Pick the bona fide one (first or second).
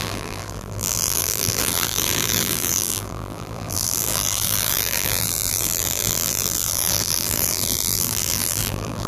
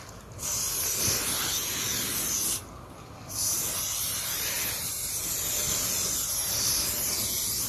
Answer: second